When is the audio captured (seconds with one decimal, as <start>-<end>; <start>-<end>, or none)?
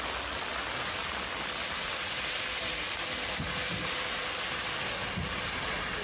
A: 0.0-6.0